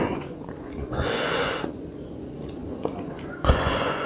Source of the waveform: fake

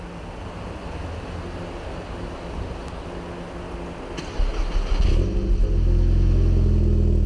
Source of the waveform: real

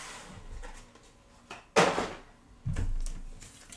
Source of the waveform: real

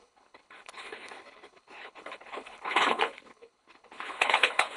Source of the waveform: fake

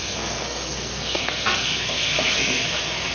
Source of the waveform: fake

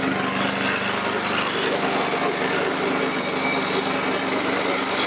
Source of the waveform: real